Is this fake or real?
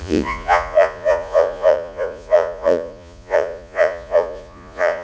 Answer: fake